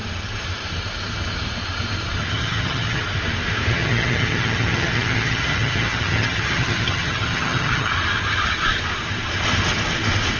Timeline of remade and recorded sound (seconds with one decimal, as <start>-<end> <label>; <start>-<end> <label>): 0.0-2.3 recorded; 2.3-3.0 remade; 3.0-3.7 recorded; 3.7-7.9 remade; 7.9-10.4 recorded